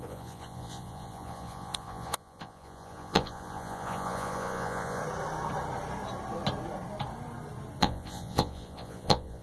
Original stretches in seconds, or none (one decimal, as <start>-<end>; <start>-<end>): 5.0-7.8